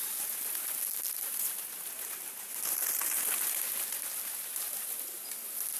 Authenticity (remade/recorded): recorded